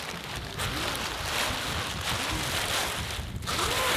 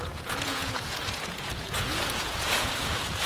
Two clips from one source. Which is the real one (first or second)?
first